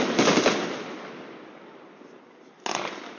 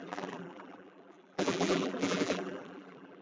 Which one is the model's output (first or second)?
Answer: second